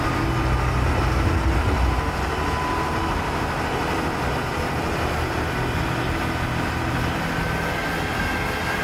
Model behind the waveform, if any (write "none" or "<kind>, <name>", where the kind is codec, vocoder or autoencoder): none